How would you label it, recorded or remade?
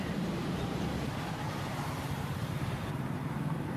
remade